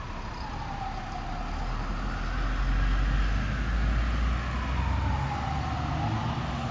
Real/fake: real